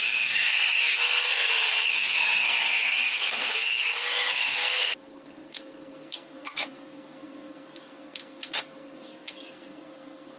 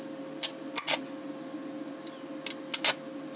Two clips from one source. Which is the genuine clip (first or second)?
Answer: second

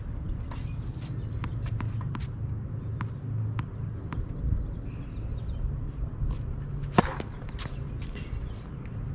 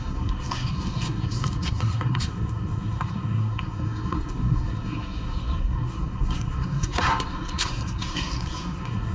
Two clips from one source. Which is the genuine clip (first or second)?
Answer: first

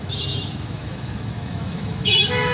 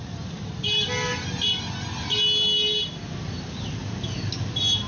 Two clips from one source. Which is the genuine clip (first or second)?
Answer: second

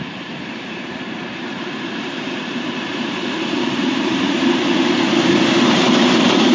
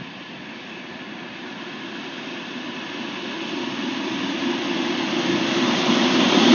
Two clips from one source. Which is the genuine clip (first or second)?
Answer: second